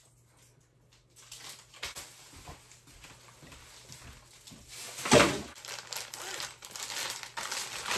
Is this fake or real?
real